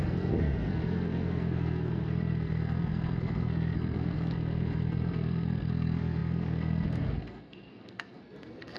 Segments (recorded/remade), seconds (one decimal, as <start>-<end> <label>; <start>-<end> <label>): 0.0-8.8 remade